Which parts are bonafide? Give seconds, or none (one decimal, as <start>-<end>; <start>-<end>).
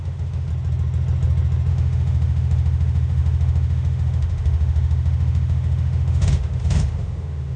0.5-1.7